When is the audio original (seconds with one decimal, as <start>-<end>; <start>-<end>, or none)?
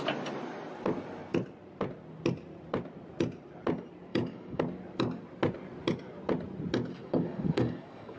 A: 0.0-4.1; 4.6-7.0